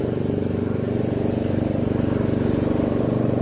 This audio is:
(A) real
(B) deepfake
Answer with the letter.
A